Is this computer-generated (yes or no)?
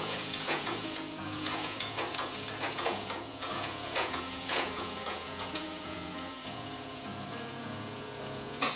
yes